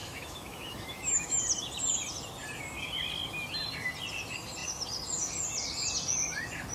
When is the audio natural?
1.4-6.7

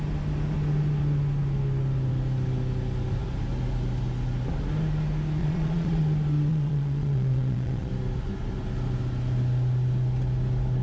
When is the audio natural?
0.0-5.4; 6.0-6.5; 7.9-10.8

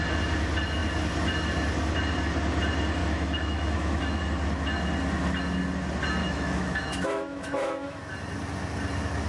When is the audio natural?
0.0-3.0; 4.2-6.2; 8.0-9.3